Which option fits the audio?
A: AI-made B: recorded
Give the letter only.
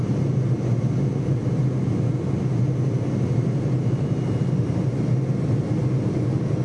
B